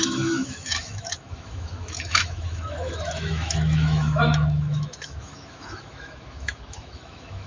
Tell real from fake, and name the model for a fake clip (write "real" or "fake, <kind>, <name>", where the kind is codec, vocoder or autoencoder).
fake, autoencoder, DAC-VAE